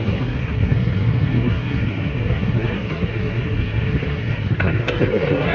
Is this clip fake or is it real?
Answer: fake